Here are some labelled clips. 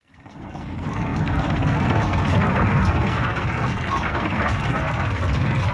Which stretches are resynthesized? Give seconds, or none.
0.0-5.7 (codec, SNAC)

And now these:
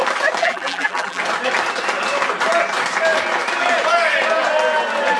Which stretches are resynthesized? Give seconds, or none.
0.4-1.2 (vocoder, BigVGAN v2)

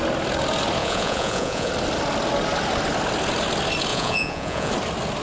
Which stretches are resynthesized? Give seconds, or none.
0.8-1.7 (vocoder, Vocos); 3.9-4.7

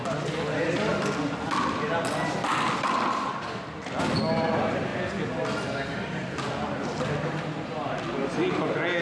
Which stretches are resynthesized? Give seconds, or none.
none

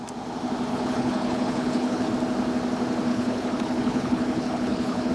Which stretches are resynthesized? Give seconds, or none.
0.7-2.1 (codec, HILCodec); 3.1-5.1

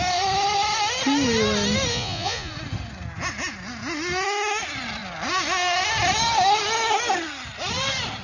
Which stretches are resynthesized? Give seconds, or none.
1.9-2.5 (vocoder, Vocos)